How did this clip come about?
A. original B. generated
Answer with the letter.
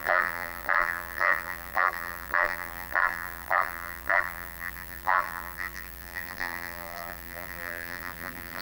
B